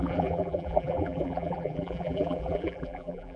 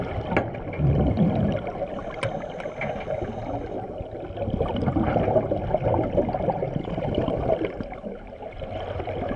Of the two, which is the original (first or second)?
second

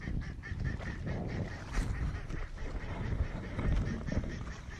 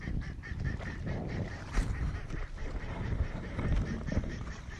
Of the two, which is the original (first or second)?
first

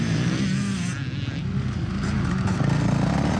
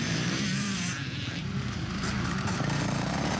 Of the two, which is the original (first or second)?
first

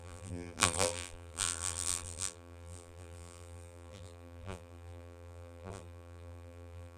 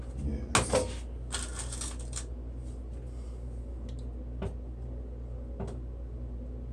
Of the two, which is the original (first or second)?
second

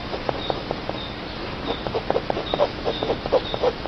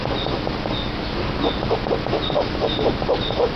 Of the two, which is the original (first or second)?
second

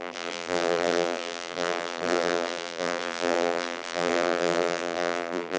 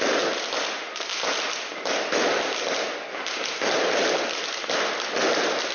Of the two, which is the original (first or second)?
second